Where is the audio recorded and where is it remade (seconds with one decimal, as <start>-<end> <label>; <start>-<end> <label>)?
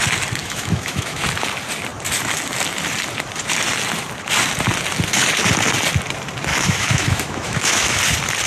0.0-0.4 recorded; 0.4-1.2 remade; 1.2-6.5 recorded; 6.5-8.0 remade; 8.0-8.5 recorded